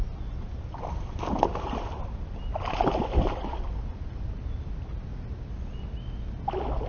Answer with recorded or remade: recorded